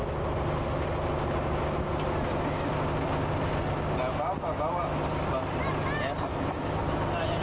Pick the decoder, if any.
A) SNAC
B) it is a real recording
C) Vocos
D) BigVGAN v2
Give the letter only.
B